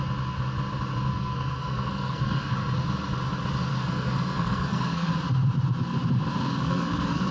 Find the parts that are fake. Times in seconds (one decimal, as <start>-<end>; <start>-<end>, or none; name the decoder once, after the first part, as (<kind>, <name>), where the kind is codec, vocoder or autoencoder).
1.1-2.6 (codec, SNAC); 3.7-5.1; 6.3-7.3

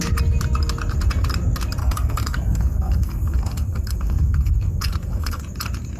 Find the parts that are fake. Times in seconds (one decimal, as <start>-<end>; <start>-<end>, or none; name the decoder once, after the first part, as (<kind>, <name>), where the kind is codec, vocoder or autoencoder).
1.8-5.4 (codec, SNAC)

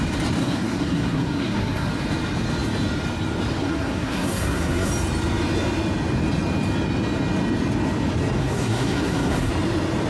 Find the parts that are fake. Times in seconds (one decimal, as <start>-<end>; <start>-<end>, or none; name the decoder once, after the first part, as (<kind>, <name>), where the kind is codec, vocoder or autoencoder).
0.4-1.9 (codec, SNAC); 3.6-4.9; 8.4-9.5